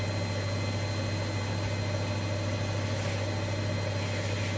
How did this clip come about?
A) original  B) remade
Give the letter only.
A